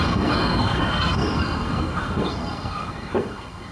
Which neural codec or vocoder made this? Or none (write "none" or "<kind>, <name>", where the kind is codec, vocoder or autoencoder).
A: codec, SNAC